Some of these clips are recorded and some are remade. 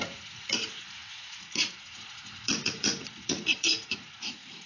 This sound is remade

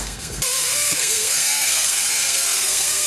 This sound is remade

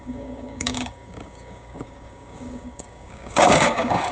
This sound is remade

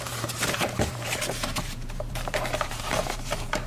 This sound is remade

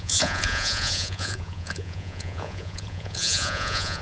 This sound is remade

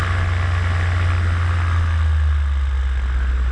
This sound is recorded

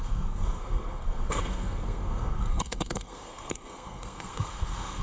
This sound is remade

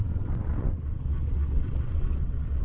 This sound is remade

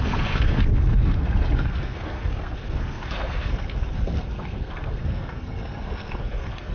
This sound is remade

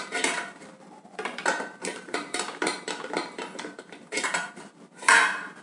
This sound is remade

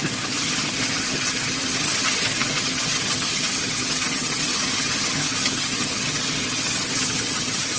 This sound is remade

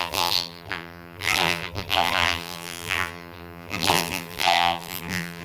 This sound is remade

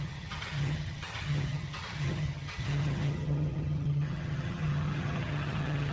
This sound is remade